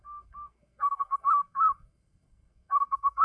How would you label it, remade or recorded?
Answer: remade